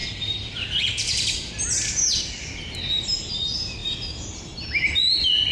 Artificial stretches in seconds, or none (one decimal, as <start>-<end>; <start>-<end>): none